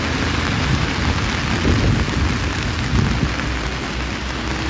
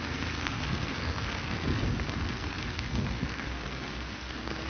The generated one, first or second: second